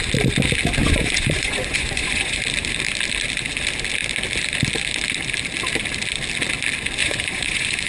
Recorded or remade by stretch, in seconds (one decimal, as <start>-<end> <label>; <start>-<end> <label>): 0.0-0.8 recorded; 0.8-2.4 remade; 2.4-7.0 recorded; 7.0-7.9 remade